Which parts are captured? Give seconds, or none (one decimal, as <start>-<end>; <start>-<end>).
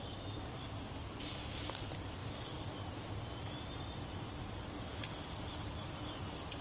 0.0-6.6